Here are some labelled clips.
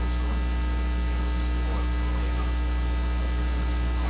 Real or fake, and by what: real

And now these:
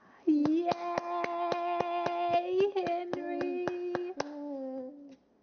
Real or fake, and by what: real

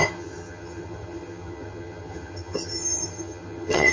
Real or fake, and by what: fake, vocoder, HiFi-GAN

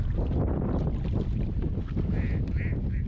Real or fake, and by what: real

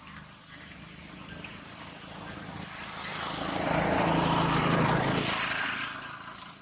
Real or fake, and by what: fake, vocoder, BigVGAN v2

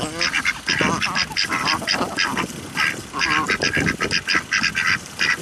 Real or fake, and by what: real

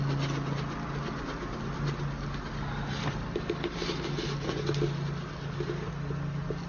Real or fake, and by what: real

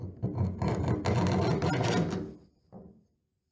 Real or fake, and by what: real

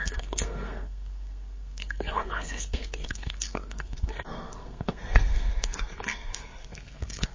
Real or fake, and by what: fake, codec, SNAC